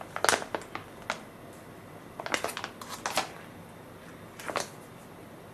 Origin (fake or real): real